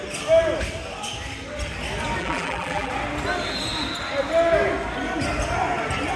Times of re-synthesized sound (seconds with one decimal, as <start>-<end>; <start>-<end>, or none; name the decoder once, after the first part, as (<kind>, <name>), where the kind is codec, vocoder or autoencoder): 2.2-2.9 (vocoder, BigVGAN v2)